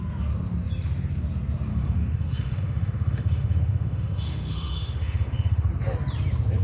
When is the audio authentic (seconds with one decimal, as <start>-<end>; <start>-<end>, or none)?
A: 0.0-1.7; 5.7-6.6